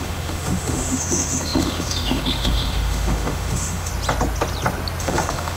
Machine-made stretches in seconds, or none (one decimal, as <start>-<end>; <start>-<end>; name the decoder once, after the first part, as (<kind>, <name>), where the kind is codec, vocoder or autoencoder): 0.0-3.9 (autoencoder, DAC-VAE); 5.0-5.6